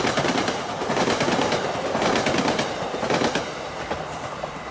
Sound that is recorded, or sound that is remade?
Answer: recorded